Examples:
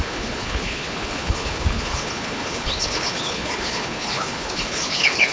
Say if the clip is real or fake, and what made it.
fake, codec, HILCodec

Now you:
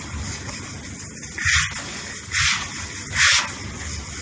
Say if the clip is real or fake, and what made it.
real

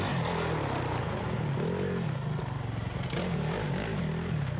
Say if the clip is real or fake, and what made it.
real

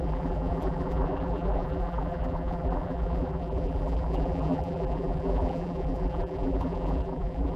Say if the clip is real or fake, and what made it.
fake, vocoder, BigVGAN v2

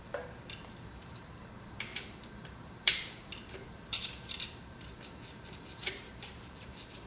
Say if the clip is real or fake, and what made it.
fake, vocoder, BigVGAN v2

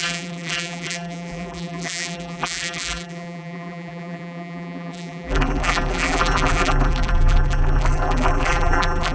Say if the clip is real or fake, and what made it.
fake, vocoder, BigVGAN v2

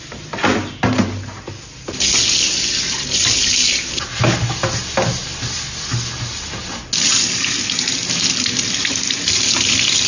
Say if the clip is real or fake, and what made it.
real